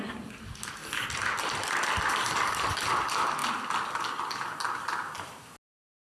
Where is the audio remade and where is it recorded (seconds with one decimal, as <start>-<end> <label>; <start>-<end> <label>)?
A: 0.0-6.1 recorded